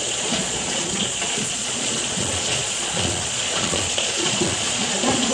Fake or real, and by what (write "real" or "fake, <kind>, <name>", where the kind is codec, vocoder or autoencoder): fake, vocoder, Vocos